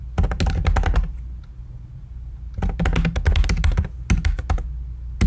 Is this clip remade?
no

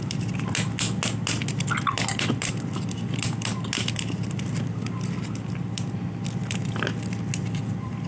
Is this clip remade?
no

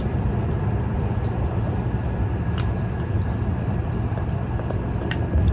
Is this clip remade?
yes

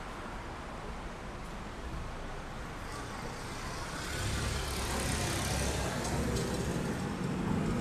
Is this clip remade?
no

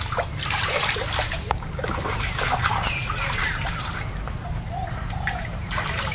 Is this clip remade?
yes